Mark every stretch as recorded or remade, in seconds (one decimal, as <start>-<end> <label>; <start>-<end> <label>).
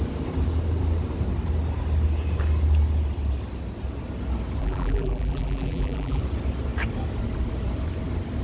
0.0-4.6 recorded; 4.6-6.2 remade; 6.2-8.4 recorded